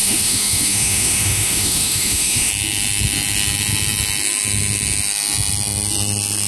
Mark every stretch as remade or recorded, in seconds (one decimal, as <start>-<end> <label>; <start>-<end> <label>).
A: 0.0-2.5 remade; 2.5-6.5 recorded